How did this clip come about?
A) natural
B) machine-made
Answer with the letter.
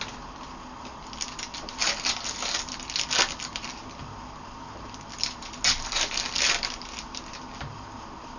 A